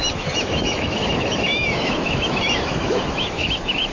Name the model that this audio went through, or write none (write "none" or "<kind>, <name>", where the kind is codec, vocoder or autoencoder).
autoencoder, DAC-VAE